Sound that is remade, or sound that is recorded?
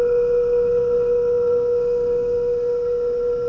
remade